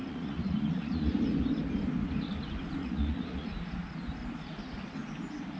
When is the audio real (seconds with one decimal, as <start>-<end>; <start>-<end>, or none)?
1.3-2.8; 3.5-5.6